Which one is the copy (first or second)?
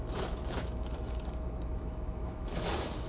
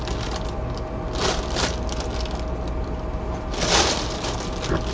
first